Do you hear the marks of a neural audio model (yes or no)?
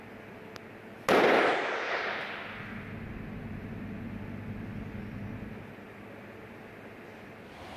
no